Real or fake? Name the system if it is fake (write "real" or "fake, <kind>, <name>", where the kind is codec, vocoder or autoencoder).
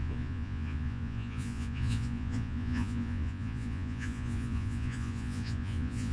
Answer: fake, vocoder, Vocos